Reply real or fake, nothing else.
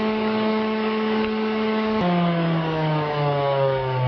fake